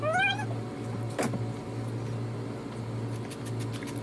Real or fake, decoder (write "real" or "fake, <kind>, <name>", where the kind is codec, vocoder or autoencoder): real